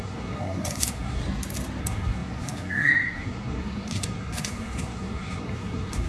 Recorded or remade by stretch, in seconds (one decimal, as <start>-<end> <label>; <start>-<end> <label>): 0.0-1.2 remade; 1.2-1.8 recorded; 1.8-6.1 remade